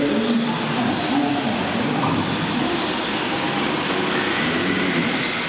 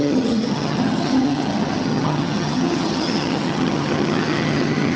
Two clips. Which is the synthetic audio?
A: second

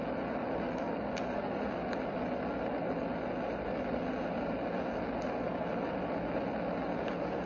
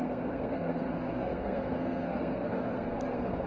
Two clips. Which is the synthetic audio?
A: second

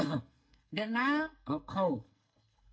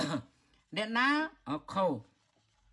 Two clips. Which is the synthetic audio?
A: first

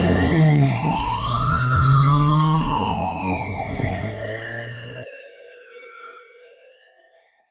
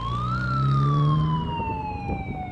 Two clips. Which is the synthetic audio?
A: first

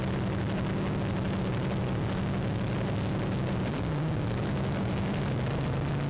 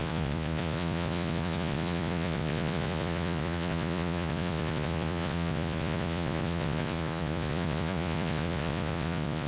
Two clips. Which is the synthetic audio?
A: second